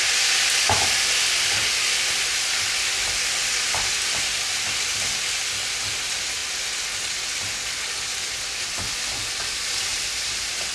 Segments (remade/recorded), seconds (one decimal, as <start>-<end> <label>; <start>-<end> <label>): 0.0-9.9 recorded; 9.9-10.7 remade